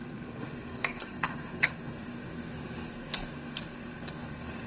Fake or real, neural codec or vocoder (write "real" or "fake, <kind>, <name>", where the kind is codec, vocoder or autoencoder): fake, codec, SNAC